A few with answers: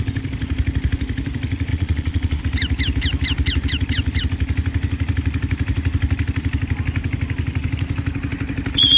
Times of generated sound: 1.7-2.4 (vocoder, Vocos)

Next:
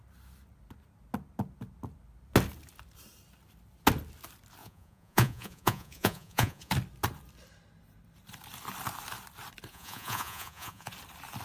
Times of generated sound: 4.6-6.7 (vocoder, Vocos); 9.7-10.9

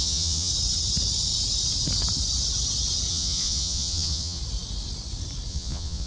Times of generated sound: 0.0-0.5 (vocoder, Vocos); 3.1-4.4; 5.5-6.1

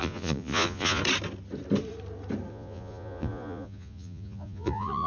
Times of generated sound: 0.0-1.0 (vocoder, Vocos); 2.5-5.1

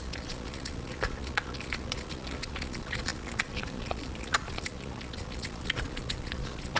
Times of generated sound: 0.0-6.8 (vocoder, Vocos)

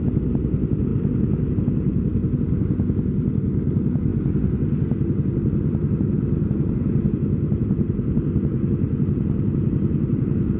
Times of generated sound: none

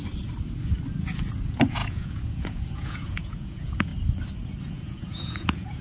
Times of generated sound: 1.4-3.9 (vocoder, Vocos); 4.6-5.8

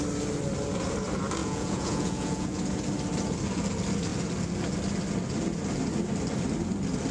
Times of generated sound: 1.4-2.6 (vocoder, Vocos)